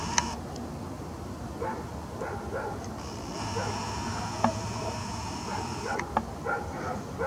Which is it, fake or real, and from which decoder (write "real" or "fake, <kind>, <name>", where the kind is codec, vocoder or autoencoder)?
real